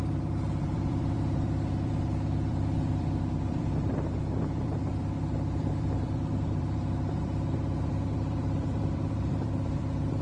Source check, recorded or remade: remade